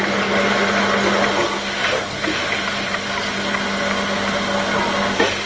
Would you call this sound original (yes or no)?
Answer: yes